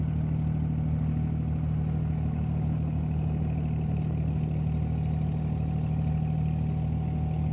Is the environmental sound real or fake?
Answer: real